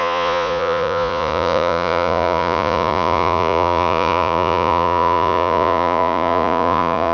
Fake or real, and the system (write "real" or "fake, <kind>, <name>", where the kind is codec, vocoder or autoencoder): fake, vocoder, Vocos